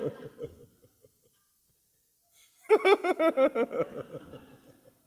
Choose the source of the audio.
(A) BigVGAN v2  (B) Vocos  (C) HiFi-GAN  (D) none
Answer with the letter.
D